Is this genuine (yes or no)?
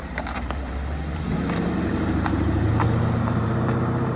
no